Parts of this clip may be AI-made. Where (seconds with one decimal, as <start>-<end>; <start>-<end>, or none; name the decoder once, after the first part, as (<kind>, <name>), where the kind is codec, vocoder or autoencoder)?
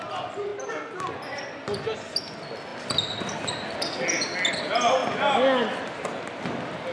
none